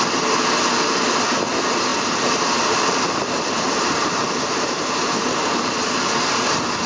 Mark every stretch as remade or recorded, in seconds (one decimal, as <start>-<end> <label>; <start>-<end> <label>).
0.0-1.9 recorded; 1.9-5.7 remade; 5.7-6.9 recorded